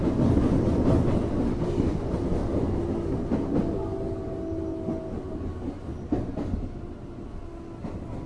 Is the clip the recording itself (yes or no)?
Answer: yes